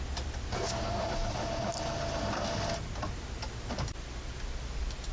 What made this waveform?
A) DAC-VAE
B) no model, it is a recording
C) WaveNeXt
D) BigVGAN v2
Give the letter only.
B